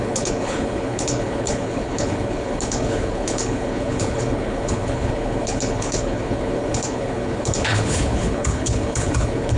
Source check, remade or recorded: remade